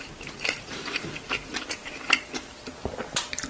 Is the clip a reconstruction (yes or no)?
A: no